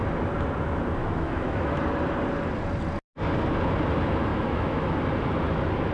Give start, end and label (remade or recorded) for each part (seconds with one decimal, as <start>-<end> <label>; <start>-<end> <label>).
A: 0.0-1.0 recorded; 1.0-1.8 remade; 1.8-4.3 recorded; 4.3-5.0 remade; 5.0-5.9 recorded